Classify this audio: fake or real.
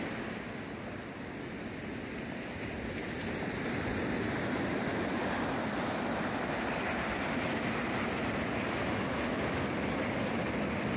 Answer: real